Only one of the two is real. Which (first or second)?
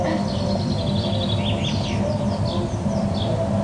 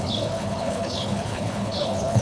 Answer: first